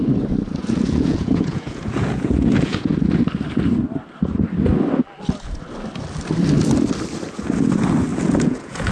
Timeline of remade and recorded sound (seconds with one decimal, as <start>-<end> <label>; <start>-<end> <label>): 0.0-0.6 recorded; 0.6-2.9 remade; 2.9-8.1 recorded; 8.1-8.9 remade